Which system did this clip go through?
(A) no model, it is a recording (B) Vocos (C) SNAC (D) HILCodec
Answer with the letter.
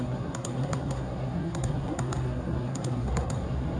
C